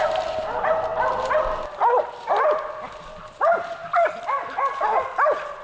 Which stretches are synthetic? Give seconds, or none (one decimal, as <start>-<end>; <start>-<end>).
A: none